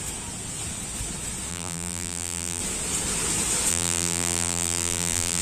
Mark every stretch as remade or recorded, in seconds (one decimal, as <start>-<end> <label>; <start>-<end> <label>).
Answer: 0.0-1.5 recorded; 1.5-2.6 remade; 2.6-3.7 recorded; 3.7-5.4 remade